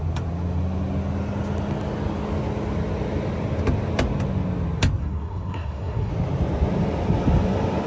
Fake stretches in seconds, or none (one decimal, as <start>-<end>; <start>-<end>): 5.0-6.1